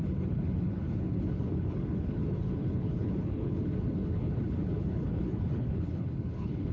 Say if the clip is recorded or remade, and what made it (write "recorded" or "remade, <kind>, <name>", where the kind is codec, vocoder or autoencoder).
remade, codec, HILCodec